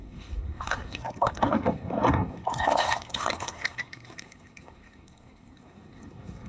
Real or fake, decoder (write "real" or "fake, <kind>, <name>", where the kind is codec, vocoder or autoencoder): fake, codec, SNAC